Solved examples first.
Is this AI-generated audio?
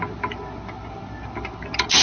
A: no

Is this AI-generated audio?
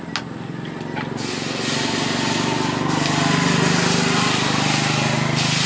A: no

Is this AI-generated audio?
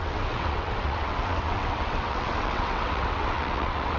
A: yes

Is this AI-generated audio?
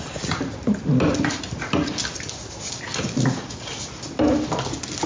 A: no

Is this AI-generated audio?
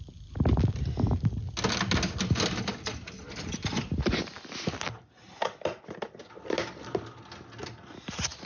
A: no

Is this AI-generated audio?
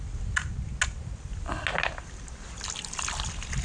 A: no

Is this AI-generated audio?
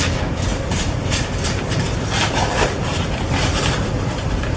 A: no